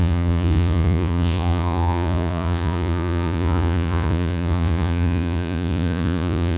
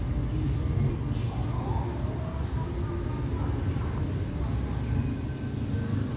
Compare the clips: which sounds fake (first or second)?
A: first